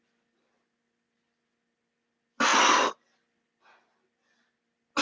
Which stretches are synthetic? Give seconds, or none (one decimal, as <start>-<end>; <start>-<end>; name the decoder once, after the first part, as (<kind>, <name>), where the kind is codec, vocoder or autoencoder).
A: none